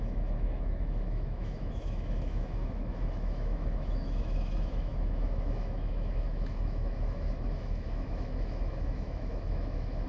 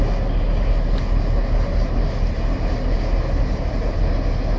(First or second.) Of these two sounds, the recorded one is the second